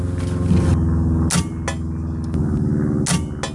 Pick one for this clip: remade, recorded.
recorded